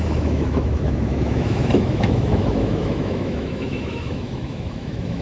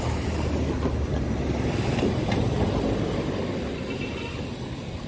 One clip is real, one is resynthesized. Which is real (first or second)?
second